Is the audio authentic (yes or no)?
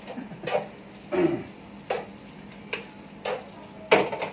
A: yes